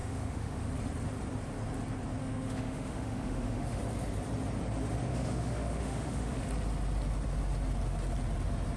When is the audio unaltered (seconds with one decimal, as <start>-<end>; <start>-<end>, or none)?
0.7-2.2; 3.8-5.1; 6.4-8.8